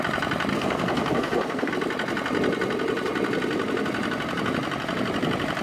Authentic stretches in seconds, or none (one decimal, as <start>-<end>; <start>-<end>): 0.0-0.5; 1.7-5.6